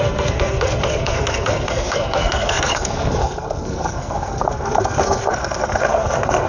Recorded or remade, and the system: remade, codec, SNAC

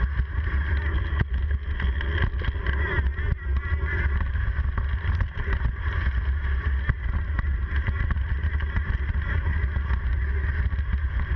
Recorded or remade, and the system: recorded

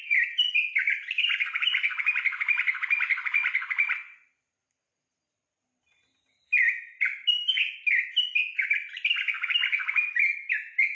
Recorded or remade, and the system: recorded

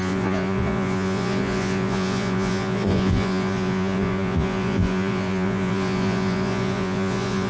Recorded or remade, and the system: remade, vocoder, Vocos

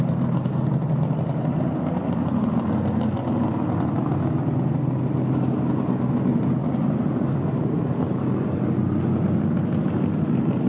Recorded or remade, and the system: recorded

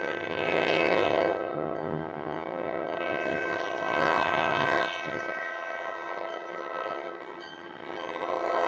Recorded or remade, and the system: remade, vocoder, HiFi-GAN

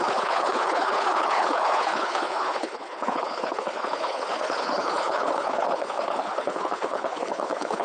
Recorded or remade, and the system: remade, codec, HILCodec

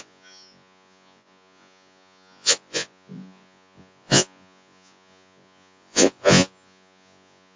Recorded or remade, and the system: remade, vocoder, Vocos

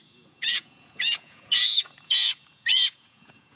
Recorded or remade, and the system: remade, vocoder, Vocos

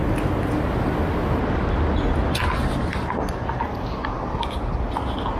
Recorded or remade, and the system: recorded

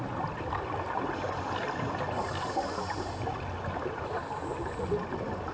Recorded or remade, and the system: recorded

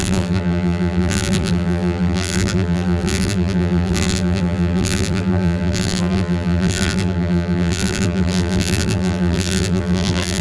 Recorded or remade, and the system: remade, vocoder, BigVGAN v2